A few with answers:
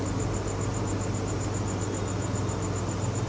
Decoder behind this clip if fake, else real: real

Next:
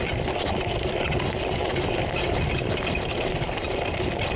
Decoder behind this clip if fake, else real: real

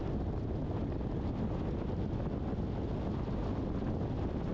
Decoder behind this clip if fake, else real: real